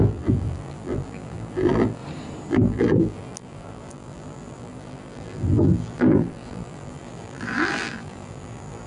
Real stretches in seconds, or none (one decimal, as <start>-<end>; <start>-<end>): 2.0-2.5

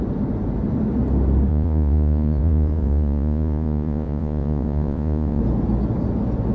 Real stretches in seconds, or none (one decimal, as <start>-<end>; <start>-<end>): 0.0-1.5; 5.4-6.5

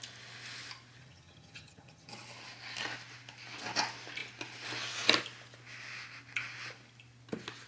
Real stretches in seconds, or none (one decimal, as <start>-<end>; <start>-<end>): 0.0-1.0; 2.1-7.7

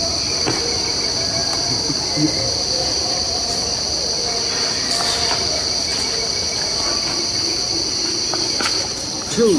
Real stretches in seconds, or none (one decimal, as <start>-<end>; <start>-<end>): 0.0-9.6

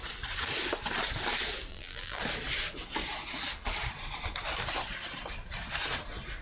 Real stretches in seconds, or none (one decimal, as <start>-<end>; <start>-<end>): 0.0-1.7; 2.2-6.4

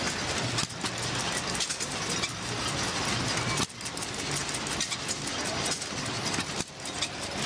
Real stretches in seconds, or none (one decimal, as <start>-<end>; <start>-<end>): 0.0-7.5

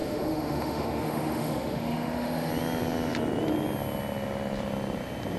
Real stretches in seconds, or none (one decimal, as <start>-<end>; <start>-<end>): 2.5-5.4